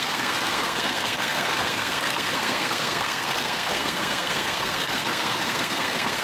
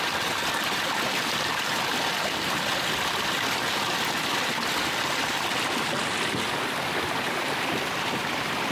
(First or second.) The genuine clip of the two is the second